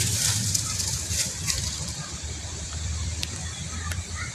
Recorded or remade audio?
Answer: remade